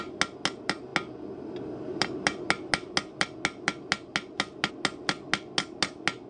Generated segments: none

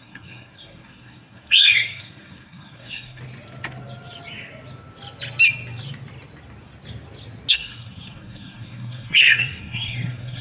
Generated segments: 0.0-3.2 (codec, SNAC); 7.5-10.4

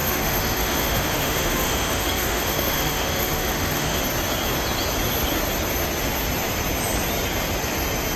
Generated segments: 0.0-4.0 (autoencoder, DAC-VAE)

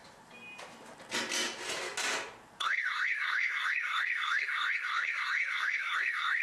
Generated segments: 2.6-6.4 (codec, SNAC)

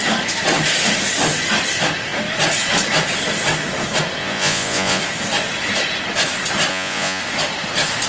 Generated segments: 4.2-5.0 (vocoder, Vocos); 6.7-7.2